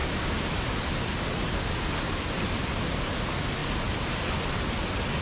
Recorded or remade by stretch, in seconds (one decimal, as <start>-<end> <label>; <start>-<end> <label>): 0.0-3.1 remade; 3.1-5.2 recorded